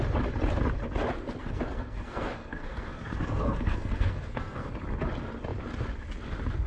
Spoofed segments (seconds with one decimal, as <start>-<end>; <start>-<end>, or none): 1.4-4.7